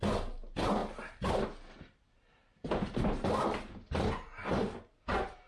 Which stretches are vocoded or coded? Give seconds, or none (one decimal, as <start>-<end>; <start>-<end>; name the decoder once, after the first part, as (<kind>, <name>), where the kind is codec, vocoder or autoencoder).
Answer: none